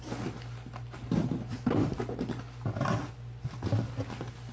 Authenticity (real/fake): real